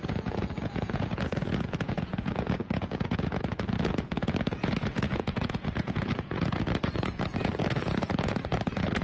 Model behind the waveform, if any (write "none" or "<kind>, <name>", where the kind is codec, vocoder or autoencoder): vocoder, Vocos